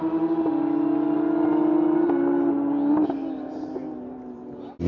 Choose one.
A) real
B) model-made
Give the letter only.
A